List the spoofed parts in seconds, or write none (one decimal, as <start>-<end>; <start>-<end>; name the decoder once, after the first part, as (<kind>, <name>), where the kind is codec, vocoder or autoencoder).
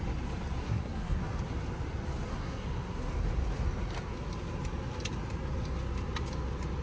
0.6-1.2 (codec, SNAC); 2.3-3.1